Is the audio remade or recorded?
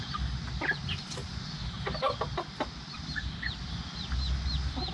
recorded